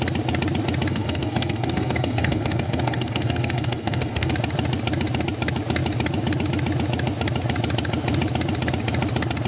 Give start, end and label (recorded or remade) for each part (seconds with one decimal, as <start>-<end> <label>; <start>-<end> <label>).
0.0-0.9 recorded; 0.9-4.3 remade; 4.3-9.5 recorded